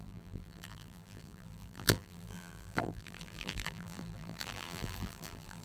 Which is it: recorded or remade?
remade